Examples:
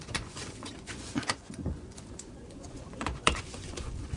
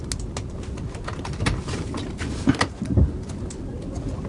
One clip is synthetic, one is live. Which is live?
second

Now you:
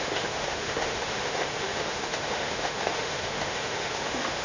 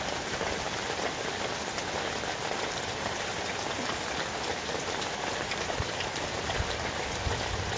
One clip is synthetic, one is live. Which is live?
second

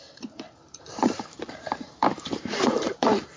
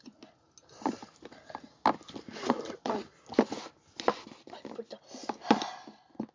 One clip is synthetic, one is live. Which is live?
second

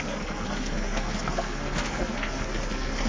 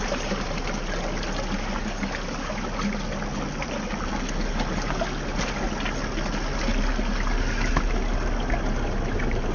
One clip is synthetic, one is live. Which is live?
second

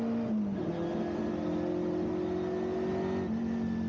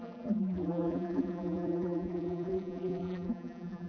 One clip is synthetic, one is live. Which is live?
first